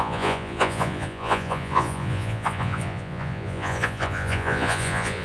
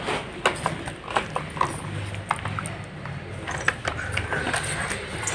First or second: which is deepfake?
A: first